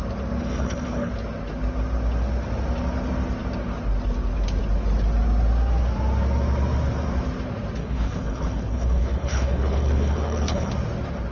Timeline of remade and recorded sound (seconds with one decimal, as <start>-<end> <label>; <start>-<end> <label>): 0.0-0.4 recorded; 0.4-1.1 remade; 1.1-7.8 recorded; 7.8-10.7 remade; 10.7-11.3 recorded